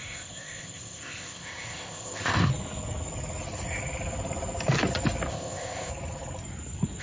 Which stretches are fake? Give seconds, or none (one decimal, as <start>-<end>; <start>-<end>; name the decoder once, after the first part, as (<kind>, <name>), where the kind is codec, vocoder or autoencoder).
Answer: 0.0-2.5 (codec, ZipCodec); 5.3-5.9